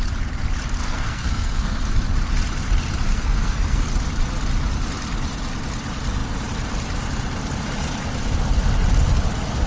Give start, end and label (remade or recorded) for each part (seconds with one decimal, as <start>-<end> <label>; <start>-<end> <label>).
0.0-0.8 recorded; 0.8-1.9 remade; 1.9-3.1 recorded; 3.1-3.9 remade; 3.9-9.7 recorded